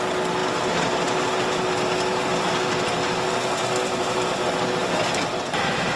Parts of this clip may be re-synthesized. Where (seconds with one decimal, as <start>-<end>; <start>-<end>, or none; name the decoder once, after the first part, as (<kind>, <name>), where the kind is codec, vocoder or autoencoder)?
none